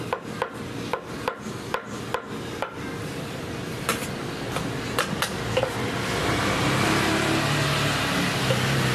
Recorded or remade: recorded